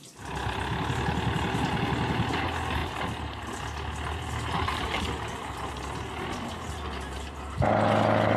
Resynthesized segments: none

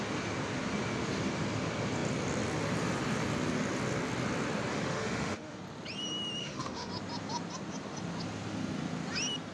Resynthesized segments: 4.7-5.6 (autoencoder, DAC-VAE); 6.4-6.9

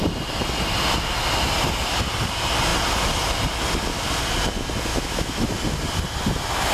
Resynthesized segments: 4.9-5.5 (autoencoder, DAC-VAE)

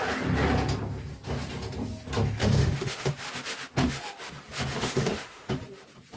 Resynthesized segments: 2.4-3.1 (autoencoder, DAC-VAE); 3.8-4.3; 4.7-5.5

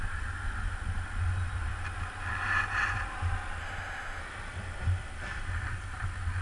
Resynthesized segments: 3.6-4.2 (autoencoder, DAC-VAE)

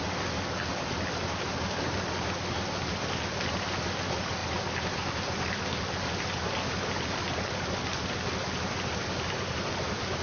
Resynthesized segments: none

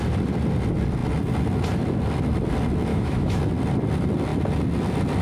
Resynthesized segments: 2.9-3.4 (autoencoder, DAC-VAE)